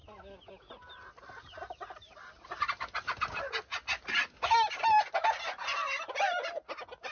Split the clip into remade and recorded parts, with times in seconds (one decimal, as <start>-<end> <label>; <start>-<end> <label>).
0.0-7.1 recorded